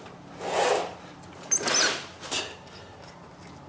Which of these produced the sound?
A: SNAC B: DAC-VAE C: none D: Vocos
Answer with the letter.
C